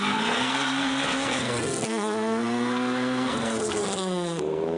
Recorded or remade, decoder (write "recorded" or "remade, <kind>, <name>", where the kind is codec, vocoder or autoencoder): remade, codec, SNAC